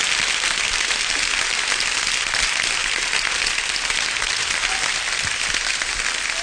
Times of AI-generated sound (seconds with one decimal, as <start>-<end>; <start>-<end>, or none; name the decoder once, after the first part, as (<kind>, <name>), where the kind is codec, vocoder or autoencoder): none